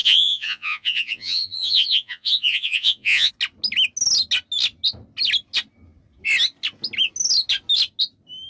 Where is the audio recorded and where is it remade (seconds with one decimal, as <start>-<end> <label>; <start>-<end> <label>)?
0.0-3.3 remade; 3.3-8.5 recorded